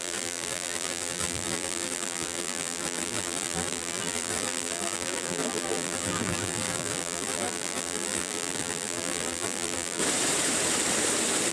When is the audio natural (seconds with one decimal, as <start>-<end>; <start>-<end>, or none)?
10.0-11.5